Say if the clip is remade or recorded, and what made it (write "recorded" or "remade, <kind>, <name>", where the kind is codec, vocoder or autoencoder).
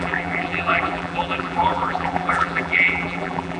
remade, vocoder, BigVGAN v2